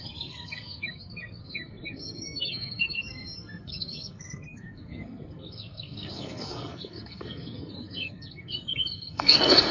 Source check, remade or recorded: remade